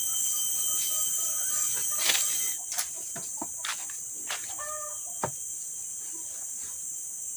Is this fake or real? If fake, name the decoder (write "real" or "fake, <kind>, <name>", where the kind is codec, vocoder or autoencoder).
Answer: real